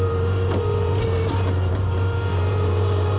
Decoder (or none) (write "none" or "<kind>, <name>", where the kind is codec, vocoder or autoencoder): vocoder, BigVGAN v2